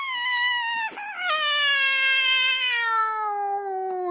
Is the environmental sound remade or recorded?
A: recorded